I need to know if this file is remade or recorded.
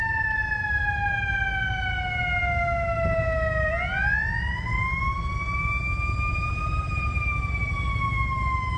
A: recorded